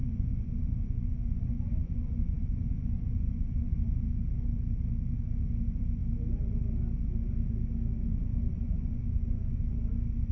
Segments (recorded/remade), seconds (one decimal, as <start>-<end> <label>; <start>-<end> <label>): 0.0-4.2 remade; 4.2-8.1 recorded; 8.1-9.6 remade; 9.6-10.3 recorded